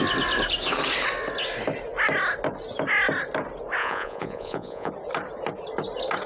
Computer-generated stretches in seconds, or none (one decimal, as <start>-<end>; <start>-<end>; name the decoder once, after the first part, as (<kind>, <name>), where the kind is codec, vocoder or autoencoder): 3.8-4.9 (vocoder, Vocos)